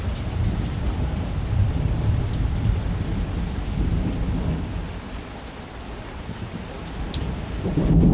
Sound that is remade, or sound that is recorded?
remade